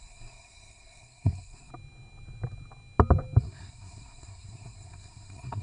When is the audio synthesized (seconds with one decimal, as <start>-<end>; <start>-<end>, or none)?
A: 0.0-1.7; 3.4-5.6

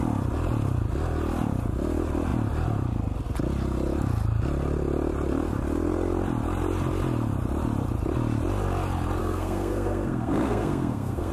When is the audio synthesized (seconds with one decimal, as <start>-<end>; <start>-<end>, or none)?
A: 9.2-11.3

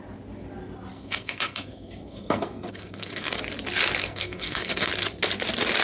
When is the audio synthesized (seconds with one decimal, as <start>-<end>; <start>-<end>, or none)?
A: 0.9-3.4; 4.0-4.9

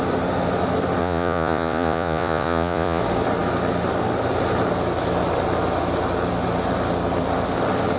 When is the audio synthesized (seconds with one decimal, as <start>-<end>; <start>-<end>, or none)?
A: 1.0-3.0

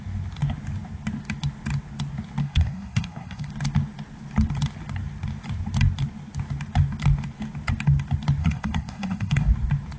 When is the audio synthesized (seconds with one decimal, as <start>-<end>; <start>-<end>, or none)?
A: 2.4-3.5; 8.4-9.5

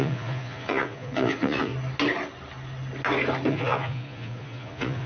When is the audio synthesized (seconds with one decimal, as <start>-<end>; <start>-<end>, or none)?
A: 0.0-1.7; 3.5-5.1